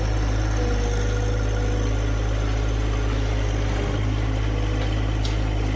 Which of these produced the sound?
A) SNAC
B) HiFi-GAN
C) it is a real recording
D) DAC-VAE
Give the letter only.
C